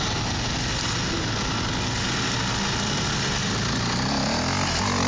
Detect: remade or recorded recorded